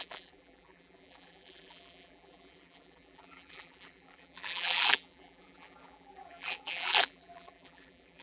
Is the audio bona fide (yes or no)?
no